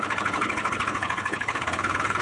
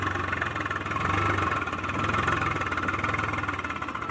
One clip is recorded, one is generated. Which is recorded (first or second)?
second